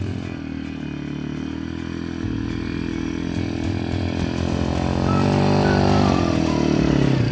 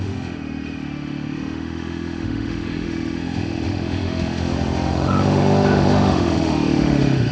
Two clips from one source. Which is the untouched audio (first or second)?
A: first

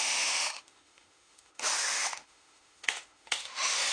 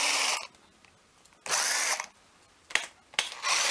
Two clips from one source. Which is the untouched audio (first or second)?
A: second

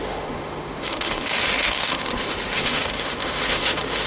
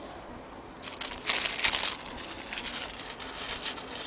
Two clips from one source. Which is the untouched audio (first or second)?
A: second